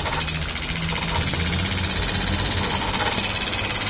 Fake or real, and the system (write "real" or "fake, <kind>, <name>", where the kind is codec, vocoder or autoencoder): real